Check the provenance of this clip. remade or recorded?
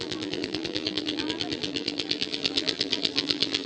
remade